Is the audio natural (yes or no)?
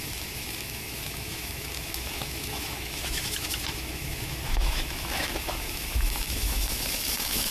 no